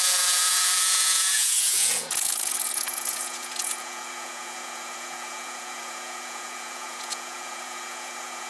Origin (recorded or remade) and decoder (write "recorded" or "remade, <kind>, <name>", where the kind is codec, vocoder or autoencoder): remade, vocoder, Vocos